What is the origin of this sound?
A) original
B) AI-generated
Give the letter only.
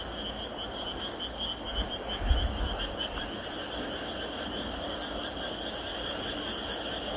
A